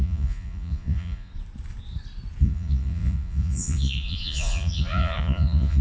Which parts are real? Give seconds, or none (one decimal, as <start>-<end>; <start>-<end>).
1.3-2.4